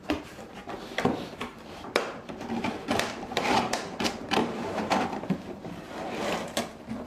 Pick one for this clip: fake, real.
fake